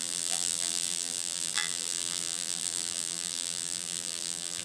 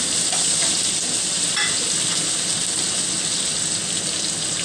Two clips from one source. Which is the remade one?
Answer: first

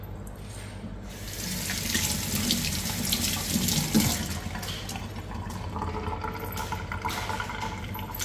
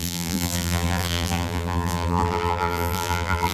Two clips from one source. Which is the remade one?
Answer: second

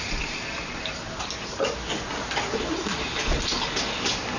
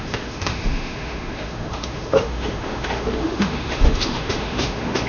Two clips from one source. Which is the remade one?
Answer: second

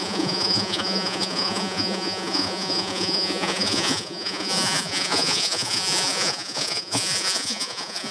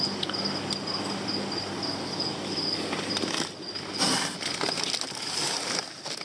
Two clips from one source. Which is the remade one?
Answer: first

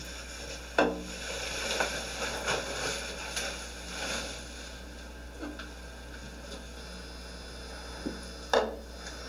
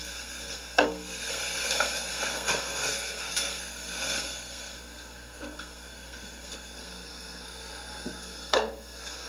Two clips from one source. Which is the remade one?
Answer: second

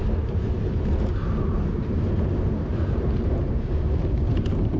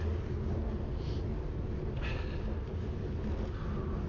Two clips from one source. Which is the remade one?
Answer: first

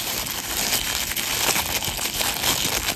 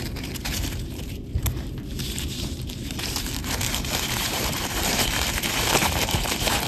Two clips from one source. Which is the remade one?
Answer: second